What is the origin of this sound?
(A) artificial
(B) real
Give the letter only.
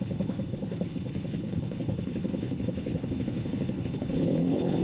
A